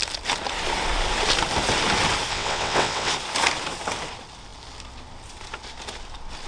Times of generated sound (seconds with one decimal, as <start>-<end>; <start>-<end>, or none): 2.3-3.1